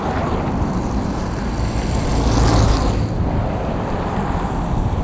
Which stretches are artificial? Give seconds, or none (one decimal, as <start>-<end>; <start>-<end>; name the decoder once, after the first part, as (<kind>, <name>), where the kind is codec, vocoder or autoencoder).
none